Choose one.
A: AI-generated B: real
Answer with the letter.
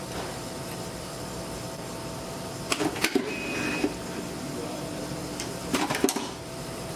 A